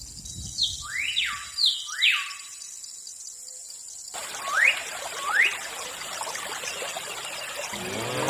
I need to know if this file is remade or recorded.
recorded